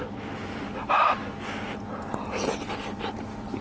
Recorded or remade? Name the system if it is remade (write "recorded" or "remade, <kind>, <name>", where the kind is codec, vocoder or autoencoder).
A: recorded